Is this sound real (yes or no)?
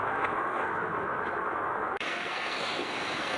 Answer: no